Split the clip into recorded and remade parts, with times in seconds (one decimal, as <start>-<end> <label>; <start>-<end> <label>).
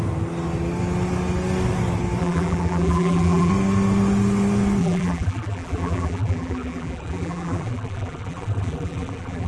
0.0-2.2 recorded; 2.2-3.5 remade; 3.5-4.8 recorded; 4.8-9.5 remade